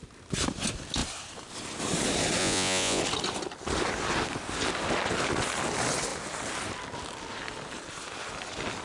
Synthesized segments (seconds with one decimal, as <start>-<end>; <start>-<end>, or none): 2.4-3.0